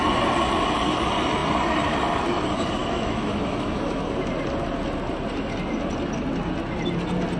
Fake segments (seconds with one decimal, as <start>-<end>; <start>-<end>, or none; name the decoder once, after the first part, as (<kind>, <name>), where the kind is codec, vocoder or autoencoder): 2.8-4.1 (autoencoder, DAC-VAE)